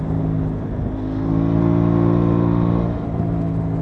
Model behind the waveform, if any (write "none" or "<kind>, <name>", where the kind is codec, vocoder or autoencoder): none